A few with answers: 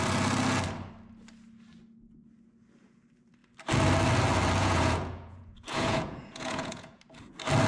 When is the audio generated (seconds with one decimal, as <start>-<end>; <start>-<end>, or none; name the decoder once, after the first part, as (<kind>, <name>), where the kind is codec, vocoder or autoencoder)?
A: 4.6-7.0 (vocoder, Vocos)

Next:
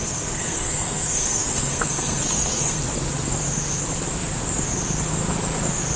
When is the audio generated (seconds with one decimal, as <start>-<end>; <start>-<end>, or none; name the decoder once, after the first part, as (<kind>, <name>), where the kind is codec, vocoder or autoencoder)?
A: 0.0-2.8 (codec, SNAC)

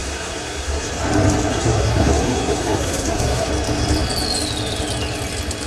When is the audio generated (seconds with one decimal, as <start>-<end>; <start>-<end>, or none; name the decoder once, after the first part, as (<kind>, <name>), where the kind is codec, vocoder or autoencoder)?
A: 0.0-0.9 (codec, SNAC); 1.5-3.5